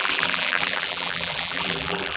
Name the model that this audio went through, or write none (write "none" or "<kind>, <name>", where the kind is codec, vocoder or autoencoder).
vocoder, BigVGAN v2